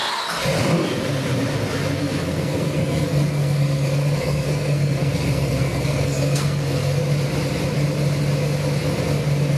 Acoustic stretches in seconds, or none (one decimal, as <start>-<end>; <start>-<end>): 0.0-2.0; 7.0-9.6